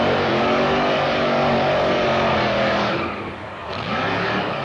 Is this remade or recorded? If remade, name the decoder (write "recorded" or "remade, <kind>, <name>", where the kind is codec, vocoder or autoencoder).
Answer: remade, codec, DAC